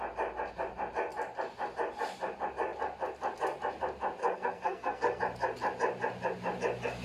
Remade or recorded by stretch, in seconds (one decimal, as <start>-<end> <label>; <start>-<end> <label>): 0.0-4.2 recorded; 4.2-5.2 remade; 5.2-7.0 recorded